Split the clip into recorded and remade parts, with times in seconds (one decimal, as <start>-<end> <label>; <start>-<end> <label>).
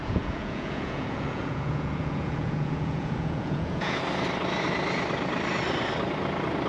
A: 0.0-4.0 remade; 4.0-6.7 recorded